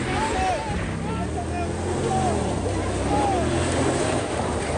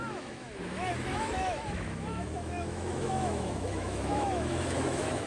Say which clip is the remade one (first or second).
second